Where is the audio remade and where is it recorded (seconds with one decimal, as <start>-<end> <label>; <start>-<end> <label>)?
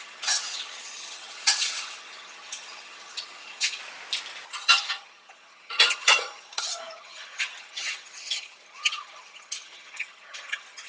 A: 0.0-3.8 remade; 3.8-4.5 recorded; 4.5-10.9 remade